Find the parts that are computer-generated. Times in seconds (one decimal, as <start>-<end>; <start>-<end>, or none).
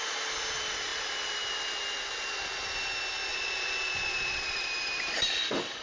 3.3-4.7